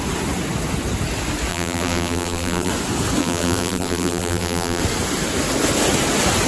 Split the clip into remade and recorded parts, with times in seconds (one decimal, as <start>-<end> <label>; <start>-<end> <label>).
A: 0.0-1.5 recorded; 1.5-2.7 remade; 2.7-3.2 recorded; 3.2-4.8 remade; 4.8-6.5 recorded